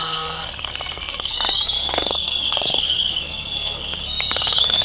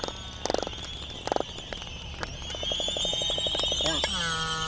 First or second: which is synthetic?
first